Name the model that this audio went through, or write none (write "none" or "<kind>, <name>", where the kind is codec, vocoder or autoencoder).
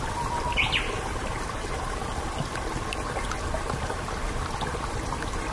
none